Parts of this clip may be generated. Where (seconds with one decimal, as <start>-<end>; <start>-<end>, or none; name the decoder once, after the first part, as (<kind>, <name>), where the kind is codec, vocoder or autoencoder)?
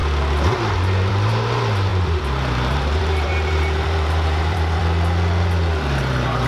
1.1-4.8 (vocoder, BigVGAN v2); 6.0-6.5